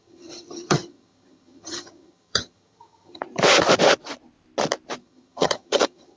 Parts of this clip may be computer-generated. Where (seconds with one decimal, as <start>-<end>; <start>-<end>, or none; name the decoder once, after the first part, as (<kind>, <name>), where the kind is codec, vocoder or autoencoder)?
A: 0.0-3.2 (vocoder, HiFi-GAN); 5.0-6.2